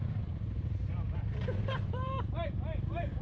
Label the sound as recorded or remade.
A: remade